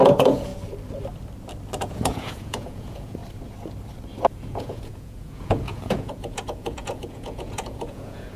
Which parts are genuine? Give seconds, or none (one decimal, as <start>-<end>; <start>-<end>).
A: 0.5-1.8; 3.2-4.3